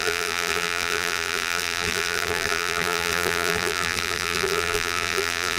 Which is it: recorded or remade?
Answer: remade